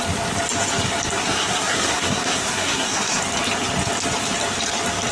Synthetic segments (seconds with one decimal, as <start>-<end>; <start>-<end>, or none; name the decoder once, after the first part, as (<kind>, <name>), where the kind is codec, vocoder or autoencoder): 1.2-3.2 (codec, SNAC)